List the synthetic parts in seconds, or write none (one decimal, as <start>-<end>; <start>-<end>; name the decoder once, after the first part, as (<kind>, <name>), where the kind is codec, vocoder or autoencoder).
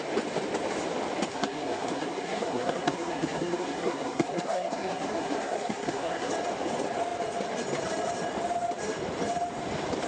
1.3-6.3 (codec, SNAC)